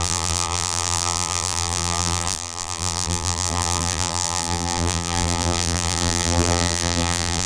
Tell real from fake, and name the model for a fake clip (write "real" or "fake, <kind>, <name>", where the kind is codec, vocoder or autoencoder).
fake, vocoder, BigVGAN v2